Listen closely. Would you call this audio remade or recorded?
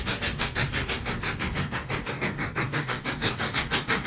remade